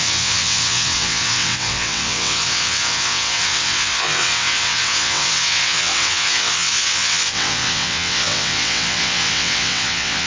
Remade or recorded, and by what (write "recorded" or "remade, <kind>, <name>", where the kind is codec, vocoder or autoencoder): remade, vocoder, WaveNeXt